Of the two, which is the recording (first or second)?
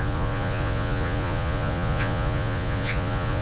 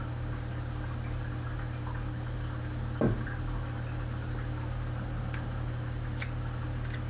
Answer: second